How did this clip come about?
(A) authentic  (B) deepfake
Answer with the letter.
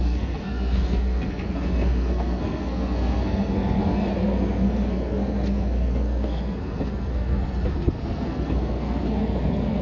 B